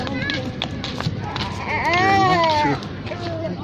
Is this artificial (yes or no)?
no